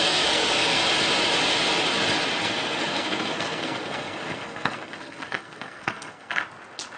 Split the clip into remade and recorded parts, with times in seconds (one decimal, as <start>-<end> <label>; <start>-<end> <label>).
0.0-0.8 remade; 0.8-2.4 recorded; 2.4-6.4 remade; 6.4-7.0 recorded